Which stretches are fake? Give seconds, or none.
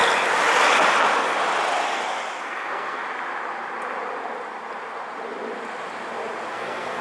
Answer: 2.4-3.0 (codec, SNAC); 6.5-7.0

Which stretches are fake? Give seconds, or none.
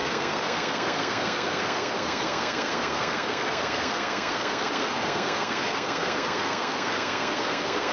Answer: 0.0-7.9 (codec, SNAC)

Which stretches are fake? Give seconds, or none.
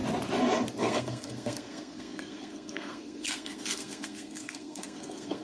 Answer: 0.8-5.4 (codec, SNAC)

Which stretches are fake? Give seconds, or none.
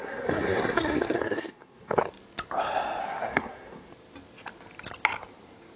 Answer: 0.0-2.0 (codec, SNAC); 3.0-3.9